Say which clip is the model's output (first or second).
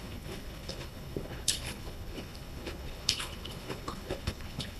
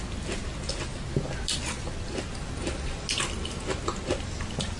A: first